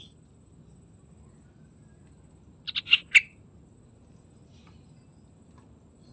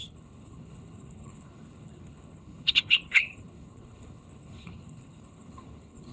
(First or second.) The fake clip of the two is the second